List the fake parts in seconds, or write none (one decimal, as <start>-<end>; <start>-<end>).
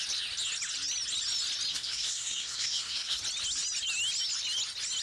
1.7-3.2